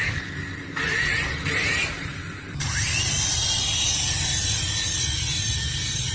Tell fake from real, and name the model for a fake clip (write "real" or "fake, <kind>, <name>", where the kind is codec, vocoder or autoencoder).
fake, vocoder, BigVGAN v2